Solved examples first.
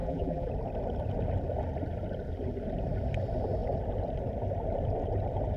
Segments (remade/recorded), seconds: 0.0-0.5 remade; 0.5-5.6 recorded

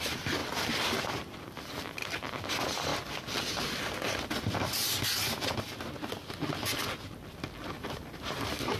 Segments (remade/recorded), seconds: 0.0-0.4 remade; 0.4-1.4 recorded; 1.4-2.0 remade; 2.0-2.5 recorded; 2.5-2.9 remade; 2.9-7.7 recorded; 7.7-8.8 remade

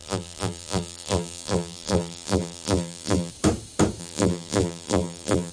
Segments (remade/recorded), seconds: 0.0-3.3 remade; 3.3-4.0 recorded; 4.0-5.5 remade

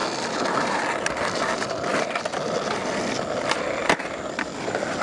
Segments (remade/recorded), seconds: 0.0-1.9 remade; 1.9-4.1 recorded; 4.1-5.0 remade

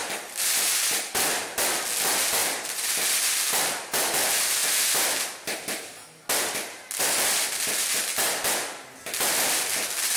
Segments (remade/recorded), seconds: 0.0-1.1 remade; 1.1-2.4 recorded; 2.4-2.9 remade; 2.9-10.2 recorded